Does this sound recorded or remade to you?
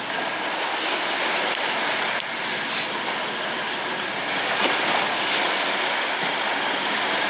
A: recorded